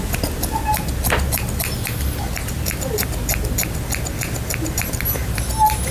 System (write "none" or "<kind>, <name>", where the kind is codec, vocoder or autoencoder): none